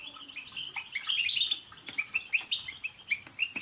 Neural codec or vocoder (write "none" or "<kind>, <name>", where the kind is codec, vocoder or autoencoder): none